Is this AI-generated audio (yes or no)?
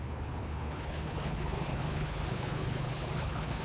yes